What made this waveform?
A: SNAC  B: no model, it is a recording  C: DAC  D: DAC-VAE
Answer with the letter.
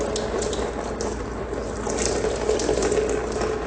B